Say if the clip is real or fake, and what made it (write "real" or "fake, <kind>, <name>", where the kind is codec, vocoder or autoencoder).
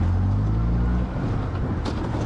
real